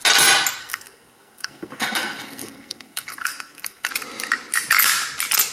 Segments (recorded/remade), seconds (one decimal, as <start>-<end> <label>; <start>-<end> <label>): 0.0-0.6 recorded; 0.6-3.9 remade; 3.9-5.5 recorded